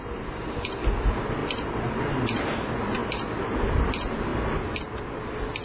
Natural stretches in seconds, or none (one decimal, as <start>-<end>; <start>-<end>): 0.0-5.6

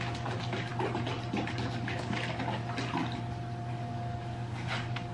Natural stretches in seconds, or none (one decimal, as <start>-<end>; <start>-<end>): 0.7-1.5; 2.6-3.7

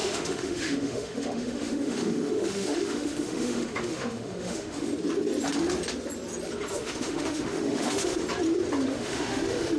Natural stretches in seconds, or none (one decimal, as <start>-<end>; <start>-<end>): 4.9-6.7; 8.2-8.9

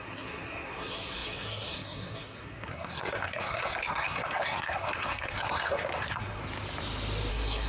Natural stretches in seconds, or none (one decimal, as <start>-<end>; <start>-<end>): 6.4-7.3